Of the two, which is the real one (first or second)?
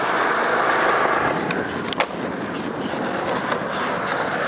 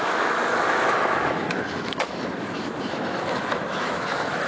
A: first